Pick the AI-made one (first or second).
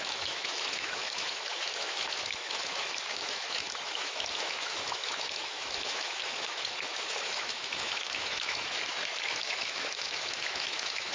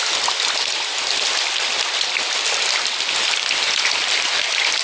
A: first